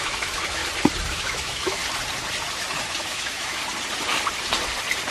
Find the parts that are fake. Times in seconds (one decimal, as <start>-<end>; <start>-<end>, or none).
0.0-0.6; 1.1-1.8; 3.0-3.6